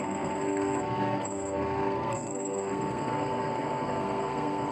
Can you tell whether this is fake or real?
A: fake